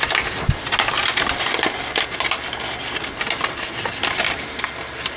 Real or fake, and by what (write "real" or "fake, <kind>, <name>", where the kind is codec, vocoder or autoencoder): real